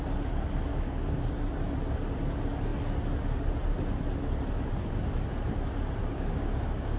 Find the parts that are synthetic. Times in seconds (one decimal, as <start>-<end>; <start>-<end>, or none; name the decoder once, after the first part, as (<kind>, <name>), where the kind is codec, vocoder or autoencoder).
0.7-1.3 (codec, DAC); 6.0-7.0